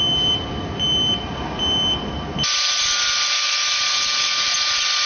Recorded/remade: recorded